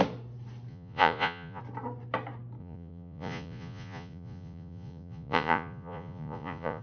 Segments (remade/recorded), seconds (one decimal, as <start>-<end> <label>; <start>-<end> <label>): 0.0-0.7 recorded; 0.7-1.6 remade; 1.6-2.6 recorded; 2.6-6.8 remade

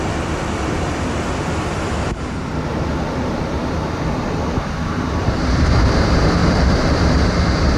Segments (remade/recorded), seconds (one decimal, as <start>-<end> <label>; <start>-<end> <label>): 0.0-2.7 remade; 2.7-3.2 recorded; 3.2-6.4 remade; 6.4-7.8 recorded

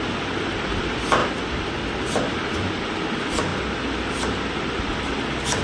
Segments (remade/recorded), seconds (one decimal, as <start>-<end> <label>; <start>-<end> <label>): 0.0-5.6 recorded

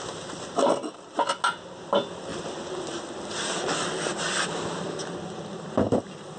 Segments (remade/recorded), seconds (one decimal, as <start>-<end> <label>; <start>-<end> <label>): 0.0-6.4 recorded

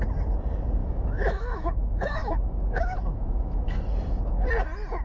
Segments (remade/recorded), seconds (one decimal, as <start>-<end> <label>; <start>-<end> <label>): 0.0-0.8 recorded; 0.8-3.8 remade; 3.8-5.0 recorded

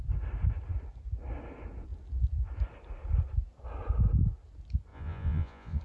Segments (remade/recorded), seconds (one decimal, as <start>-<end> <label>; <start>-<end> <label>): 0.0-4.9 recorded; 4.9-5.8 remade

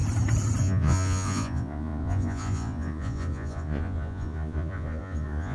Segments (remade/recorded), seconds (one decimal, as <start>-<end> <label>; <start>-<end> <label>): 0.0-0.6 recorded; 0.6-5.5 remade